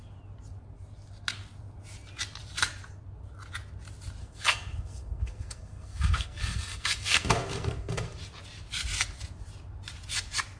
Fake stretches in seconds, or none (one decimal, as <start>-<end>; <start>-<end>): 4.2-8.2